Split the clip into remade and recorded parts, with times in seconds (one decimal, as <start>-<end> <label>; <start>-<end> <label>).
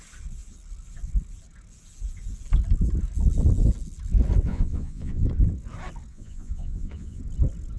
0.0-4.5 recorded; 4.5-5.2 remade; 5.2-6.1 recorded; 6.1-7.2 remade; 7.2-7.8 recorded